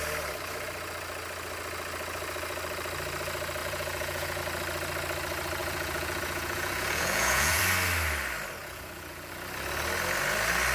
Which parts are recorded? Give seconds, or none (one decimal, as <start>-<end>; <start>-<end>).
0.0-3.6; 4.4-5.6; 7.6-8.6; 9.3-10.7

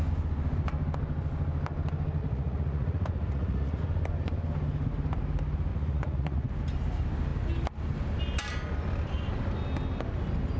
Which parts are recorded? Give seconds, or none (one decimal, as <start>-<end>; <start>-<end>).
0.0-2.2; 3.8-5.7; 6.5-10.6